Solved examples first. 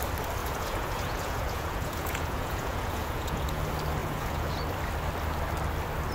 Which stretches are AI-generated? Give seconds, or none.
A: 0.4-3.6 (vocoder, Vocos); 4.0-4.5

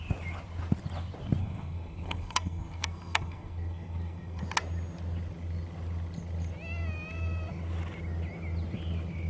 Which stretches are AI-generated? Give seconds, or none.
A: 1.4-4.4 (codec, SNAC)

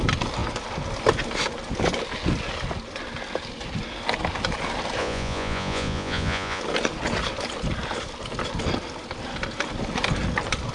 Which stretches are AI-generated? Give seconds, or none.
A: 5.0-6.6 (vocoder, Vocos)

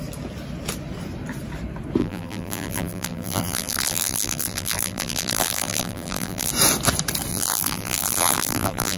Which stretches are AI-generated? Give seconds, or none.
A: 2.0-6.5 (vocoder, BigVGAN v2); 7.3-9.0

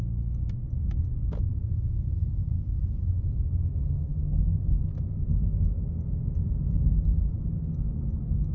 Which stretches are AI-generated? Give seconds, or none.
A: 1.5-2.3 (autoencoder, DAC-VAE); 4.1-7.5

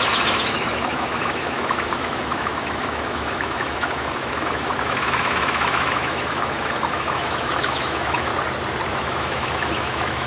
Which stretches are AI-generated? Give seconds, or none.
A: 0.0-8.3 (autoencoder, DAC-VAE); 8.9-10.3

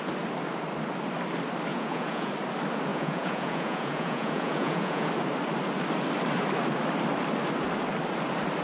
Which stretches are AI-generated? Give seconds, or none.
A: 1.7-2.3 (vocoder, Vocos); 2.9-5.1